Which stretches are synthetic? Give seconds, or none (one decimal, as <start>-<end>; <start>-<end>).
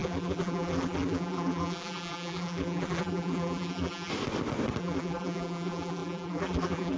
0.0-4.1; 4.8-7.0